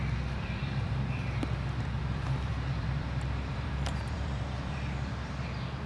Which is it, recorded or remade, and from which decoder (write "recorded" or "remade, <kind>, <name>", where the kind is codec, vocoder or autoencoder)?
remade, vocoder, BigVGAN v2